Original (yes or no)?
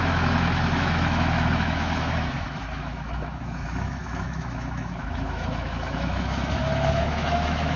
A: no